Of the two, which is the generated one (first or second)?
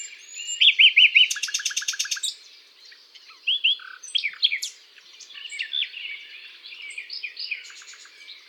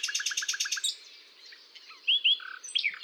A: first